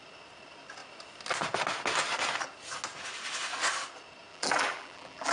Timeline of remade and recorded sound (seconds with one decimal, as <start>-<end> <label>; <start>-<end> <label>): 0.0-4.3 recorded; 4.3-5.3 remade